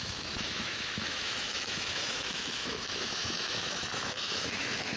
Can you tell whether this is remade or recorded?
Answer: remade